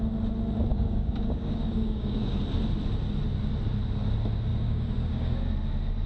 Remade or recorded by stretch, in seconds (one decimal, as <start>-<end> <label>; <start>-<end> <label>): 0.0-0.7 recorded; 0.7-2.4 remade; 2.4-4.5 recorded; 4.5-5.5 remade; 5.5-6.1 recorded